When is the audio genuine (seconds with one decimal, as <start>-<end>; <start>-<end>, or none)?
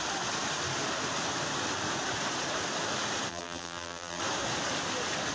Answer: 0.0-3.3; 4.2-5.3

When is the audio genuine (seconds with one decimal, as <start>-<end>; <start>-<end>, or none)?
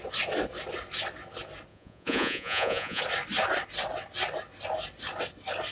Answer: 0.0-1.7; 3.0-5.7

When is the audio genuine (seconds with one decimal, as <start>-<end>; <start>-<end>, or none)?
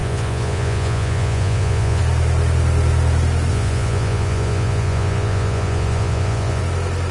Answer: 2.0-3.5; 6.6-7.1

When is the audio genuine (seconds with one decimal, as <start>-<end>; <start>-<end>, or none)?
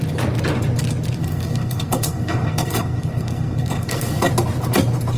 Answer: 0.0-1.2; 4.3-5.2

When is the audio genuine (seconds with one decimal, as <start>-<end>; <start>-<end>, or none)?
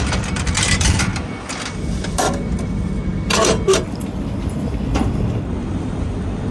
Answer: 1.1-2.1; 3.1-4.6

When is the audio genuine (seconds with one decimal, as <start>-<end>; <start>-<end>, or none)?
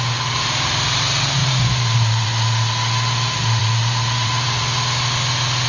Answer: 0.0-1.4; 2.3-3.6; 4.6-5.7